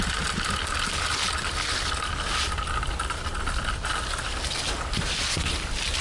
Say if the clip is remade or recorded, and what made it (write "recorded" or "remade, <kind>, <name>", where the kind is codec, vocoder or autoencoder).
recorded